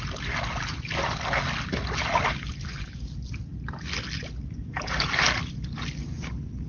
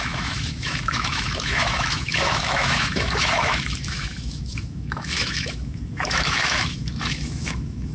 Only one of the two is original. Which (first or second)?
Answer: first